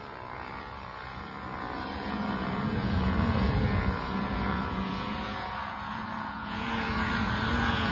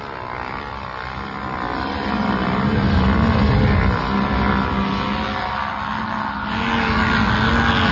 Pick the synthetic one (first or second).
first